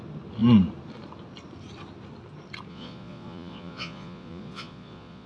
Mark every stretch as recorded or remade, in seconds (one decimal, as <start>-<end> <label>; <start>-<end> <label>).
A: 0.0-2.7 recorded; 2.7-5.3 remade